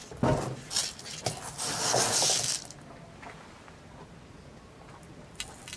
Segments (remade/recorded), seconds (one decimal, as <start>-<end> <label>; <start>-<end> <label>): 0.0-5.8 recorded

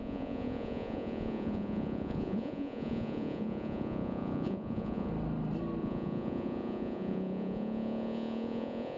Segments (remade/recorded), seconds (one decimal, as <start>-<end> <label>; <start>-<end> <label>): 0.0-5.1 remade; 5.1-5.8 recorded; 5.8-9.0 remade

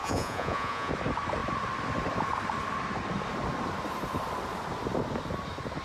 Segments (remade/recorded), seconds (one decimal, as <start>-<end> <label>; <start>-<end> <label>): 0.0-0.9 remade; 0.9-5.8 recorded

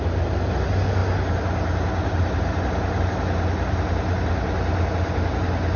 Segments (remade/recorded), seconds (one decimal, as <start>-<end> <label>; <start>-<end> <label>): 0.0-5.8 recorded

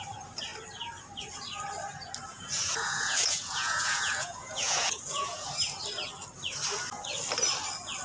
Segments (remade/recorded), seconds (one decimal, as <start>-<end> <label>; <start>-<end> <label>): 0.0-2.3 recorded; 2.3-5.5 remade; 5.5-8.0 recorded

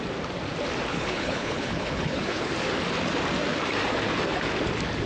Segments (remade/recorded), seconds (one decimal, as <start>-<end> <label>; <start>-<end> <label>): 0.0-0.9 recorded; 0.9-2.5 remade; 2.5-5.1 recorded

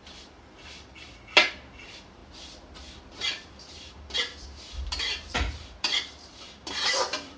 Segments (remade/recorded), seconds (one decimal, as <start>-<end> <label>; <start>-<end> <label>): 0.0-0.9 remade; 0.9-1.5 recorded; 1.5-2.2 remade; 2.2-3.1 recorded; 3.1-7.4 remade

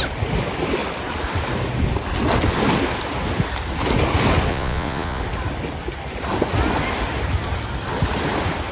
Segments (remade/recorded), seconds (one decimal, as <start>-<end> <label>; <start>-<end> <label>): 0.0-4.5 recorded; 4.5-5.2 remade; 5.2-8.7 recorded